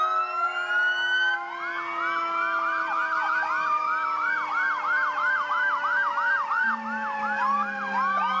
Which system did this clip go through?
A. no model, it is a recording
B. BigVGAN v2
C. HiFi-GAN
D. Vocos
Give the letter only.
A